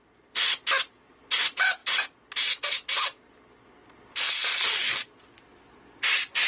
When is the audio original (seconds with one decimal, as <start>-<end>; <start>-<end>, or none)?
0.0-6.5